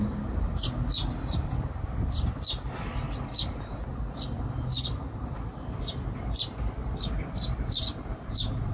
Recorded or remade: recorded